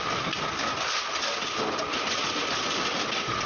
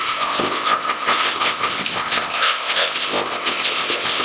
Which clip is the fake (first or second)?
second